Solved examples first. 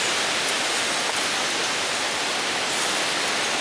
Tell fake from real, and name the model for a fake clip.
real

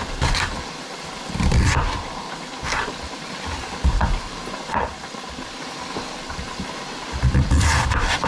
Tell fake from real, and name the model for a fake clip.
fake, vocoder, BigVGAN v2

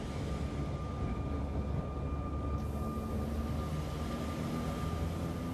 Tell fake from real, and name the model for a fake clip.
real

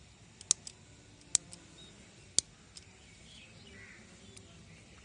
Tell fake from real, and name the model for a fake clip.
real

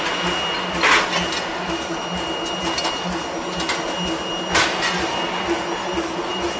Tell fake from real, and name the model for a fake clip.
real